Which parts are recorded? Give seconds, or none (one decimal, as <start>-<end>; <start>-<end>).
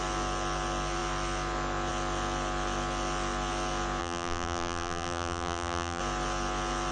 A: 0.0-4.0; 6.0-6.9